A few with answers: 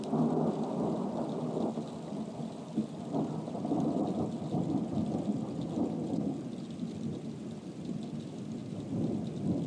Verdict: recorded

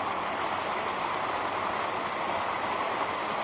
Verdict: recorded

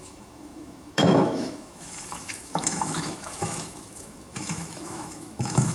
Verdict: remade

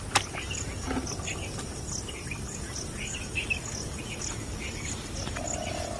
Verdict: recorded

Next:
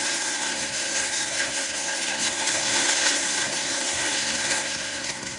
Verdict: remade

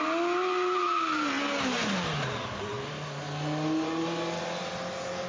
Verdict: recorded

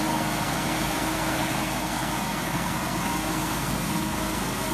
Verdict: remade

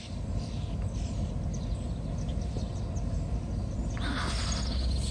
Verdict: recorded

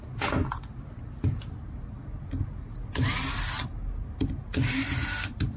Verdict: recorded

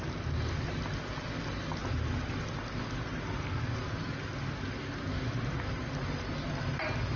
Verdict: recorded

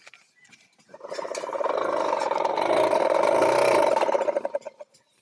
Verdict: recorded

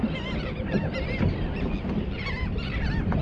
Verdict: recorded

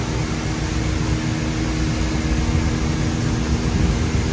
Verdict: recorded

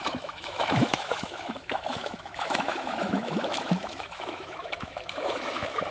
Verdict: remade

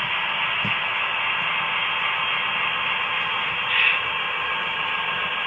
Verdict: recorded